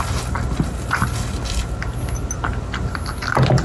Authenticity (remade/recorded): recorded